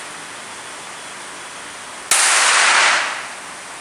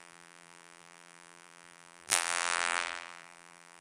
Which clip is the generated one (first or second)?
second